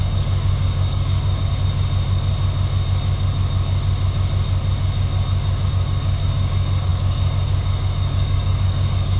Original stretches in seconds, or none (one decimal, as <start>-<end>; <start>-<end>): 1.5-5.7